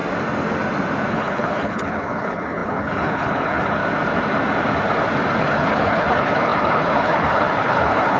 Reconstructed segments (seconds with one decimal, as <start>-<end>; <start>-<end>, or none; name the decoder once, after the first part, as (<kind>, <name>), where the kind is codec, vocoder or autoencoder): 1.1-3.8 (codec, HILCodec); 5.4-8.2